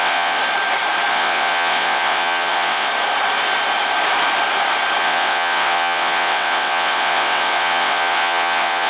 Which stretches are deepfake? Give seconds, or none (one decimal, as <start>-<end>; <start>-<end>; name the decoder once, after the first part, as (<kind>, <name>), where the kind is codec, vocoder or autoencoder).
0.0-0.4 (vocoder, WaveNeXt); 1.1-2.9; 5.0-8.9